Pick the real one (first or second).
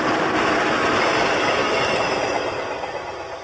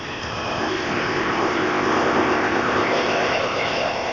first